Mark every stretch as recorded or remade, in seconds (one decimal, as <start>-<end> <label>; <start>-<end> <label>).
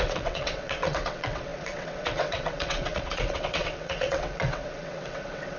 0.0-5.6 remade